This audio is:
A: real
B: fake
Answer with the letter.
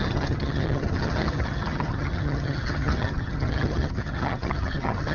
B